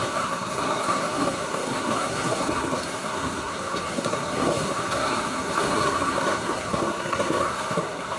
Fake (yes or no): yes